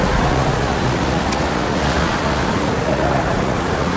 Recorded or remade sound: remade